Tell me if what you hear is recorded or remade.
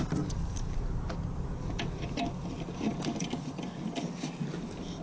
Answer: recorded